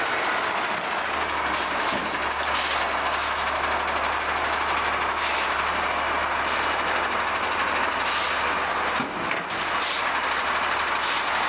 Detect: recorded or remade recorded